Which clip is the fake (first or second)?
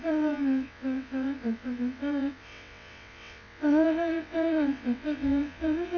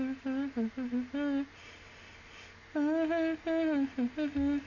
first